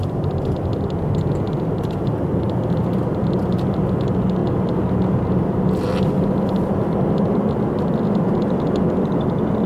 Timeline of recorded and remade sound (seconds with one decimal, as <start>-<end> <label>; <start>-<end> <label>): 0.0-0.7 remade; 0.7-1.9 recorded; 1.9-4.4 remade; 4.4-6.4 recorded; 6.4-9.7 remade